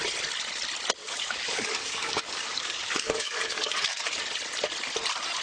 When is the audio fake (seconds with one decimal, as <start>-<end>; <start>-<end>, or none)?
1.0-4.2